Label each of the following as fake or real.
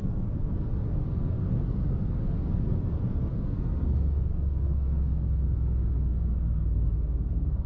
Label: fake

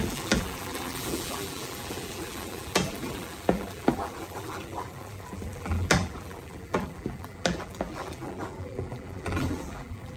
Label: fake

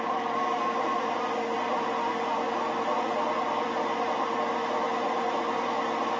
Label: real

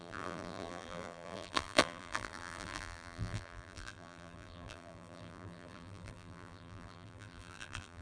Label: fake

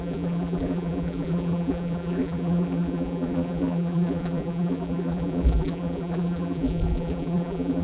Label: fake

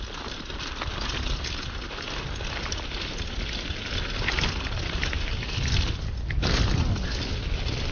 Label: real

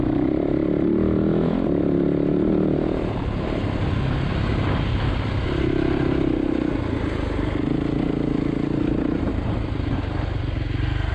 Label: real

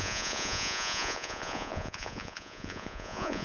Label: fake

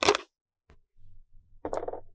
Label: real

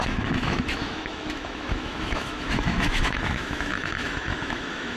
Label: fake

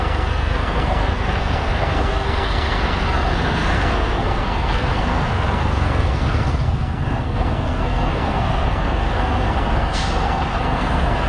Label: fake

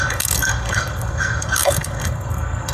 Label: fake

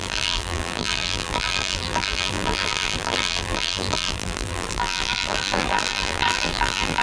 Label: fake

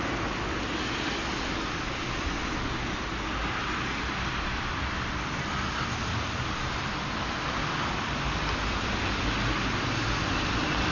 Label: real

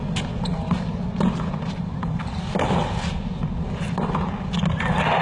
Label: real